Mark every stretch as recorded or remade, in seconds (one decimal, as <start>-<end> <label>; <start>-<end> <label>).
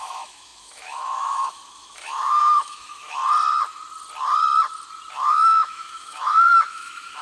0.0-3.2 remade; 3.2-5.1 recorded; 5.1-7.2 remade